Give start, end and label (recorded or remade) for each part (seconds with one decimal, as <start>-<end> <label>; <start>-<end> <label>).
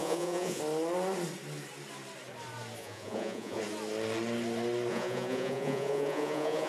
0.0-0.6 remade; 0.6-2.8 recorded; 2.8-3.6 remade; 3.6-4.9 recorded; 4.9-6.7 remade